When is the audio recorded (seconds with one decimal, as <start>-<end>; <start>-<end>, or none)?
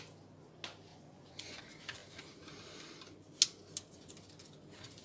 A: 0.0-0.9; 1.6-5.0